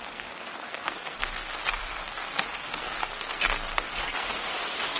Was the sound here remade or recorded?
remade